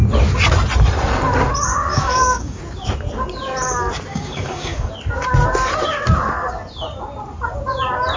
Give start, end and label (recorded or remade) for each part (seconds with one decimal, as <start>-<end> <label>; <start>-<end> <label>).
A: 0.0-1.9 recorded; 1.9-2.6 remade; 2.6-4.1 recorded; 4.1-4.9 remade; 4.9-8.2 recorded